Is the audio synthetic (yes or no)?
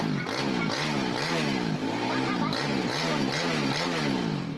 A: no